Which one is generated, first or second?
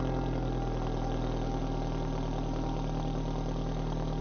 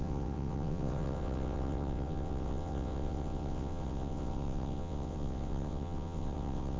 second